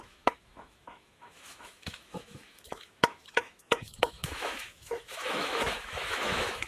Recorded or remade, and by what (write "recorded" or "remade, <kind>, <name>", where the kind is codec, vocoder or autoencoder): remade, autoencoder, DAC-VAE